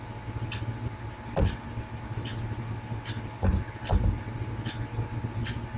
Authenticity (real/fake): real